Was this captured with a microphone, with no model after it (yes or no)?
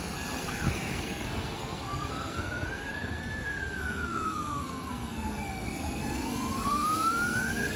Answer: no